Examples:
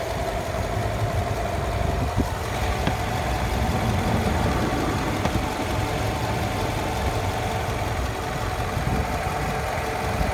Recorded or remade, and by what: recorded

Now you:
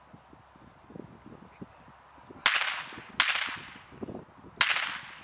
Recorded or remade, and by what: recorded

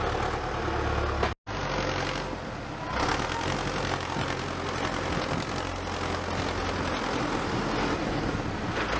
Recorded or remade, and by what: recorded